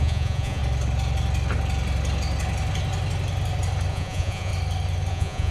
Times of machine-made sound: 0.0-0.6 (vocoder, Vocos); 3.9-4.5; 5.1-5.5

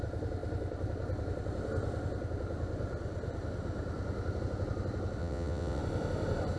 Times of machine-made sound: 5.2-5.8 (vocoder, WaveNeXt)

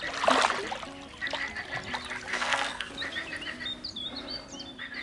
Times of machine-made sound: 2.3-2.9 (codec, SNAC)

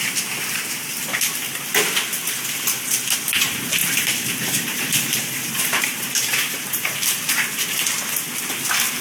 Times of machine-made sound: 3.8-7.0 (vocoder, BigVGAN v2)

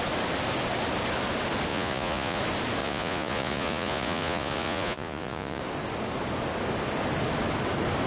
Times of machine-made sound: 1.7-2.4 (vocoder, Vocos); 2.8-5.6

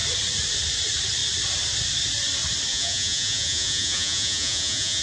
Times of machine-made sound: 2.7-5.0 (vocoder, Vocos)